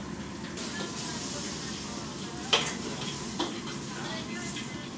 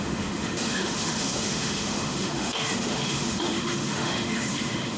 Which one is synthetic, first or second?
second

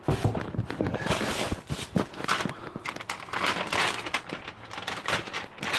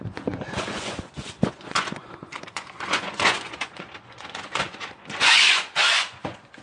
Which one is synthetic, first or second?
second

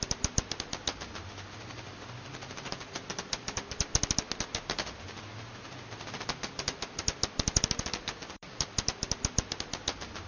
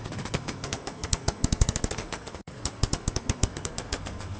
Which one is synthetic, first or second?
second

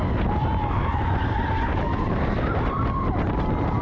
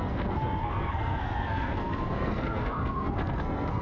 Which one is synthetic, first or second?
second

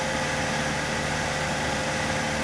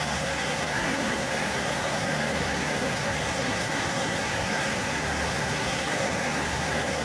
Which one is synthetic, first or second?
second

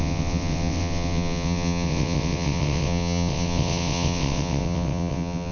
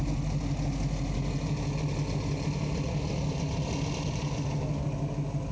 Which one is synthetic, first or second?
first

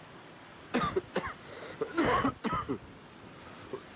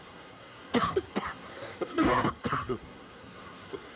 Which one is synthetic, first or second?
second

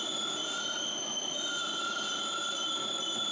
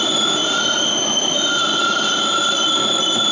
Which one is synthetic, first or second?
second